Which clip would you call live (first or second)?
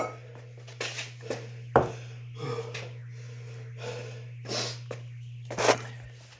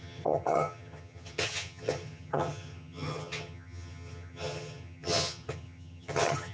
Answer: first